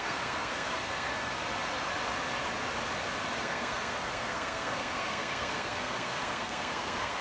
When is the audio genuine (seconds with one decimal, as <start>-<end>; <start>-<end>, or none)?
1.1-3.4